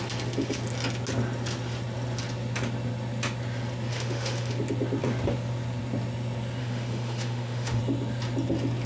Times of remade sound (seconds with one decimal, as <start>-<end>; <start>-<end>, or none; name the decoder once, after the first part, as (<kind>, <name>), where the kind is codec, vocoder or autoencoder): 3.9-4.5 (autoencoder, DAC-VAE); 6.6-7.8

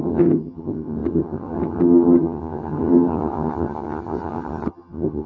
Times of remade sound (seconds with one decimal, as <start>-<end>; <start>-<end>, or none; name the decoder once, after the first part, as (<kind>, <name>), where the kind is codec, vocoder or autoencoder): 0.0-5.3 (vocoder, HiFi-GAN)

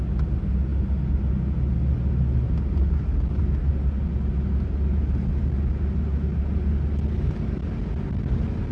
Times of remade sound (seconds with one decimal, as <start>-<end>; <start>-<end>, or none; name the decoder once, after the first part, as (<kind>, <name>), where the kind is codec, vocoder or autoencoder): none